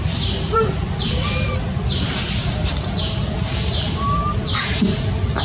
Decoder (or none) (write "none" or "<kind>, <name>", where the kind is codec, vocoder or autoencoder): vocoder, BigVGAN v2